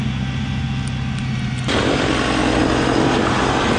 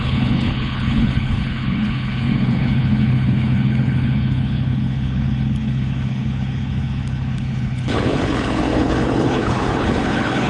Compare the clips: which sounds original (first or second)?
first